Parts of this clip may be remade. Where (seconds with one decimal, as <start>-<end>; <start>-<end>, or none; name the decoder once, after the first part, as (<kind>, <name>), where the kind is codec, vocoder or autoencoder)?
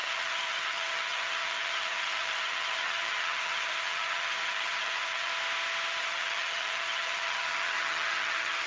0.0-5.3 (vocoder, HiFi-GAN); 6.0-8.7